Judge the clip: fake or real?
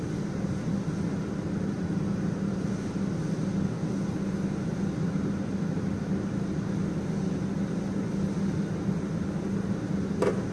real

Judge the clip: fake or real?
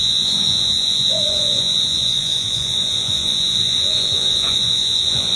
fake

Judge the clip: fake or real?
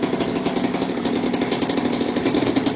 real